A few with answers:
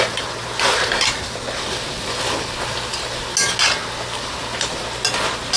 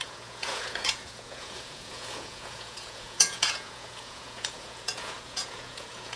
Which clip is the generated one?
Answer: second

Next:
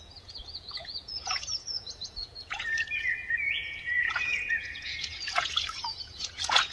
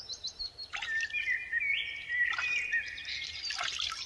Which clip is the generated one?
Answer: first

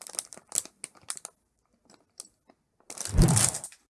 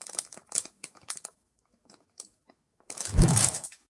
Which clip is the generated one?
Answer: second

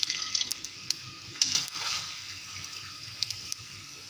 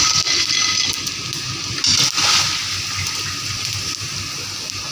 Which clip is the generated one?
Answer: first